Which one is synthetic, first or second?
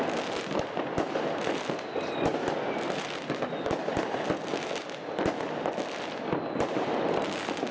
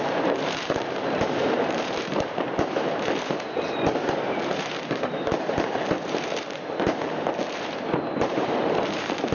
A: second